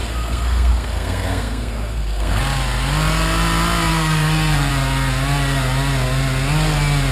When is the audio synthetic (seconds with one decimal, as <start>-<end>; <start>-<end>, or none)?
0.0-2.4; 3.9-4.7